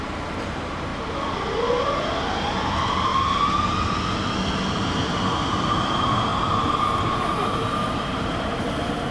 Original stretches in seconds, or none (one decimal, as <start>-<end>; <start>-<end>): 0.9-2.2; 3.1-5.6; 6.3-7.1